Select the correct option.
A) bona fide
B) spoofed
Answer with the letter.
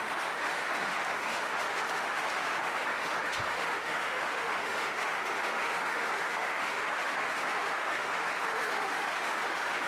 B